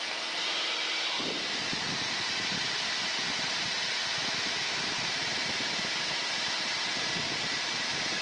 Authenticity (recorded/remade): recorded